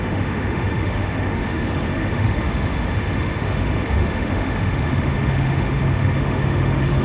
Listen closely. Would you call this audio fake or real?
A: fake